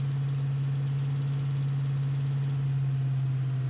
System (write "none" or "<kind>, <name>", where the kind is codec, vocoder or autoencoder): none